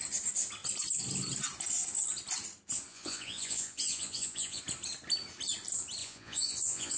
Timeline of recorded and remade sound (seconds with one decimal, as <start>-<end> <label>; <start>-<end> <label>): 0.0-2.9 recorded; 2.9-4.6 remade; 4.6-6.0 recorded; 6.0-7.0 remade